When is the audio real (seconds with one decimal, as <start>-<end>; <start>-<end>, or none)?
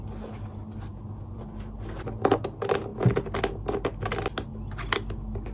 0.0-0.9; 1.4-5.5